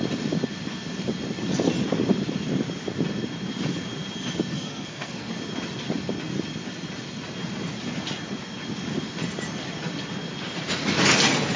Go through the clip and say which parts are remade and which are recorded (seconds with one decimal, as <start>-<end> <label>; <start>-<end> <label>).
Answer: 0.0-4.5 recorded; 4.5-5.3 remade; 5.3-11.6 recorded